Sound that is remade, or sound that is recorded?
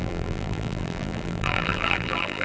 remade